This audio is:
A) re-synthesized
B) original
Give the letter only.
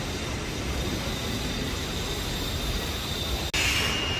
B